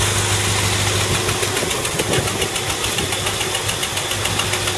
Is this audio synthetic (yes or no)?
no